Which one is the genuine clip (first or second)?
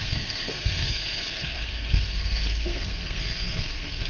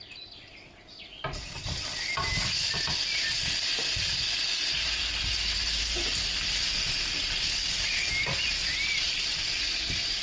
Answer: second